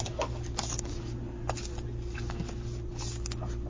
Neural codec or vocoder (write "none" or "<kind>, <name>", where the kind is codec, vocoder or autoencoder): none